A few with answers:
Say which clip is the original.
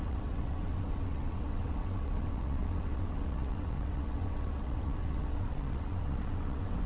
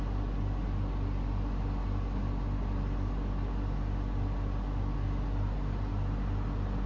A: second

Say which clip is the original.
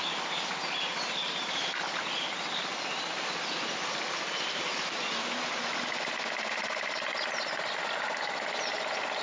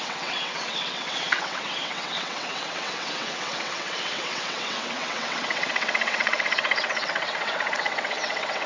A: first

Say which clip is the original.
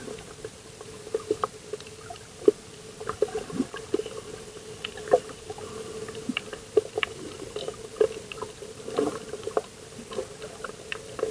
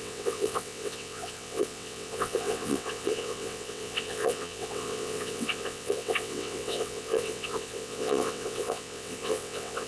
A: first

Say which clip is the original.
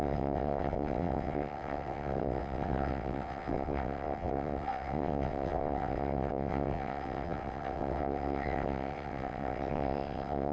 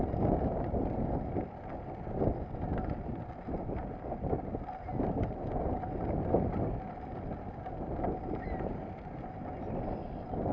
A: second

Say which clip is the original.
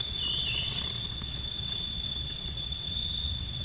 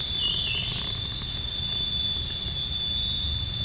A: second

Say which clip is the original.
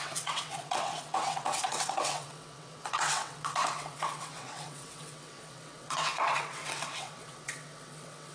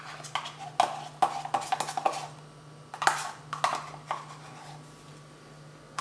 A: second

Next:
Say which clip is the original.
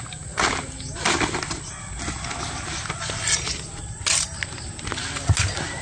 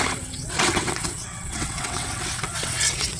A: first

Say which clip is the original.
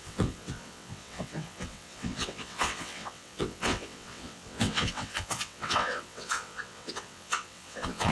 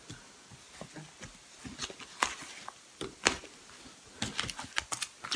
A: second